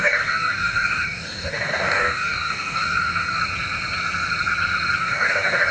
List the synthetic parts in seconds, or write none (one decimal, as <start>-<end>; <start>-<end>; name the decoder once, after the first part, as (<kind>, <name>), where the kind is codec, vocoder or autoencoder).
0.0-3.4 (codec, DAC); 5.0-5.7